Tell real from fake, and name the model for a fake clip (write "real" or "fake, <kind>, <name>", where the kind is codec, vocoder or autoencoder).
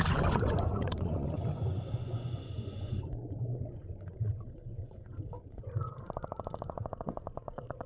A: fake, vocoder, Vocos